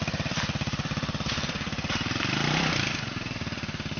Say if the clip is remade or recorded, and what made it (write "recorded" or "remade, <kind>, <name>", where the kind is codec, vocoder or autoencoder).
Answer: remade, vocoder, BigVGAN v2